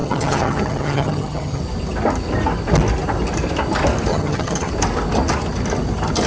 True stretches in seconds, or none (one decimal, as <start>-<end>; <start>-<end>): 1.6-4.1; 4.7-6.3

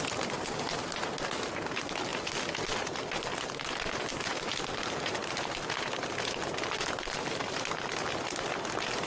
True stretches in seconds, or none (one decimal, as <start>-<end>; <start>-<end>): 0.0-9.1